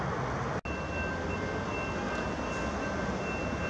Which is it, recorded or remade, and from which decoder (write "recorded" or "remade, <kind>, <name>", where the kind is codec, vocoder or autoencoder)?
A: recorded